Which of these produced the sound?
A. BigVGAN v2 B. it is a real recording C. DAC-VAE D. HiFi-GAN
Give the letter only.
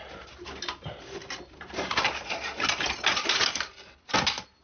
B